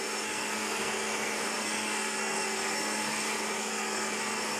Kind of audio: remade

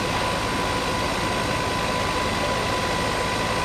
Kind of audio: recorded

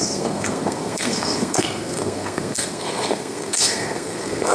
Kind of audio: remade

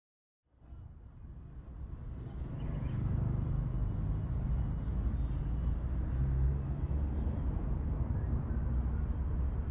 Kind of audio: recorded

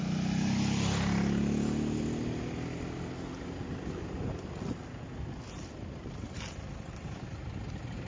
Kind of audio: recorded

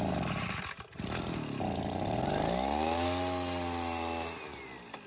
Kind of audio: recorded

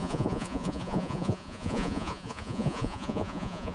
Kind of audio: remade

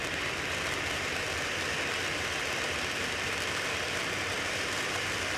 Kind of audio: remade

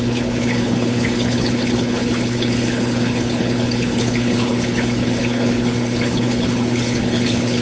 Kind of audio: remade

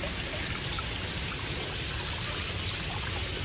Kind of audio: recorded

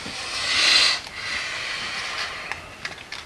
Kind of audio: recorded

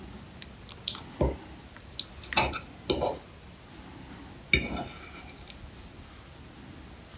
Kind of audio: recorded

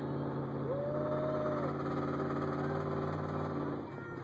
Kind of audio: recorded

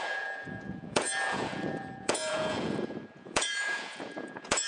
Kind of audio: remade